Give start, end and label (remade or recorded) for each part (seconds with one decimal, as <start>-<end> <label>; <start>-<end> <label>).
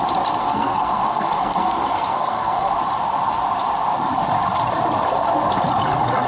0.0-0.4 recorded; 0.4-2.7 remade; 2.7-6.3 recorded